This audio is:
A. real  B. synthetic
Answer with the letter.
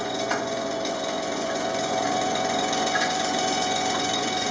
B